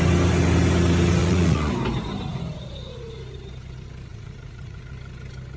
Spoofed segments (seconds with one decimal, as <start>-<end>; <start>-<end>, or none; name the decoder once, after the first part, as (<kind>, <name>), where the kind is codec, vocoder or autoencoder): 1.2-1.7 (vocoder, Vocos); 4.1-4.9